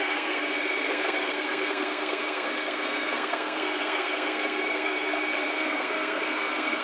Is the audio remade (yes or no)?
yes